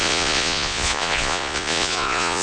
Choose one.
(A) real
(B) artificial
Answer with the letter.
B